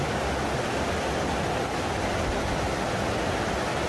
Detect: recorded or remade recorded